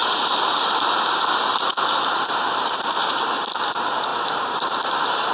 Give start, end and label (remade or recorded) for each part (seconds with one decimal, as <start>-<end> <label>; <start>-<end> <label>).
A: 0.0-4.1 recorded; 4.1-5.3 remade